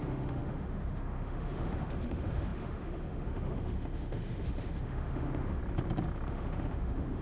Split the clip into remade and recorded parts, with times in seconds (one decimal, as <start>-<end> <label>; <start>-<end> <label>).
0.0-5.6 remade; 5.6-6.3 recorded; 6.3-7.2 remade